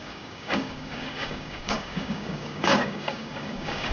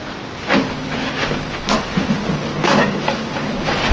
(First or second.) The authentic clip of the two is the second